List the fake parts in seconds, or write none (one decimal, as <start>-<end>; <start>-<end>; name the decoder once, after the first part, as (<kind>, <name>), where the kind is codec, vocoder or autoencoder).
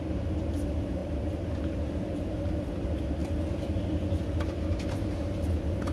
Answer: none